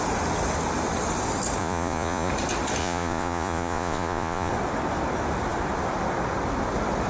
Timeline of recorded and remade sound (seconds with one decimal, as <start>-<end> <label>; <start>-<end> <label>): 0.0-1.6 recorded; 1.6-2.3 remade; 2.3-2.8 recorded; 2.8-4.5 remade; 4.5-7.1 recorded